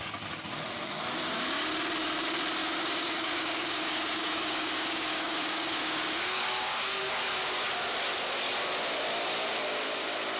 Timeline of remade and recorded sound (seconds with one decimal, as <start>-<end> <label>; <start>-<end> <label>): 0.0-2.6 recorded; 2.6-7.1 remade; 7.1-10.4 recorded

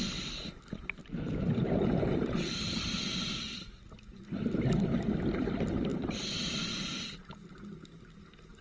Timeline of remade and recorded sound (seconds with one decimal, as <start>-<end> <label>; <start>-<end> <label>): 0.0-1.0 recorded; 1.0-3.7 remade; 3.7-5.9 recorded; 5.9-7.0 remade; 7.0-8.6 recorded

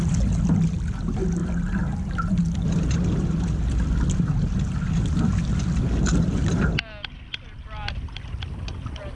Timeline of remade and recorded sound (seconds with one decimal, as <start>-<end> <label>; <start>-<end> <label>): 0.0-9.1 recorded

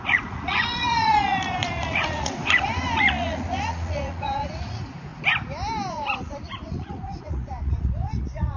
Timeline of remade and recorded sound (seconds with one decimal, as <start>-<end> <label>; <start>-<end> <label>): 0.0-5.1 remade; 5.1-5.9 recorded; 5.9-8.6 remade

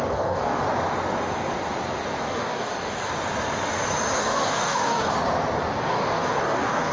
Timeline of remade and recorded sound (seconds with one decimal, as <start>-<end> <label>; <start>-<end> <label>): 0.0-0.6 remade; 0.6-2.2 recorded; 2.2-3.1 remade; 3.1-4.2 recorded; 4.2-5.1 remade; 5.1-5.8 recorded; 5.8-6.9 remade